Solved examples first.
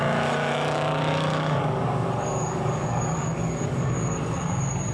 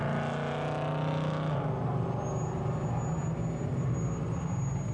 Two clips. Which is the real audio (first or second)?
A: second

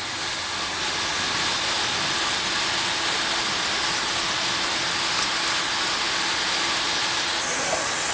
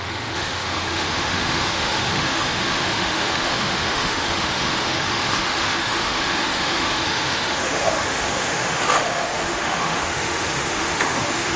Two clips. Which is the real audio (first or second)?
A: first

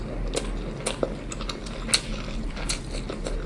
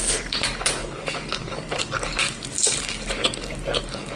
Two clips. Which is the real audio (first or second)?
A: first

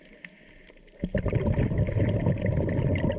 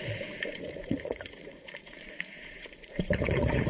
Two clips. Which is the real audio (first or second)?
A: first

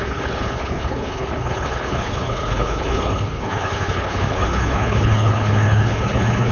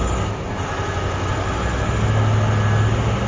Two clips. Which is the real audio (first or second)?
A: second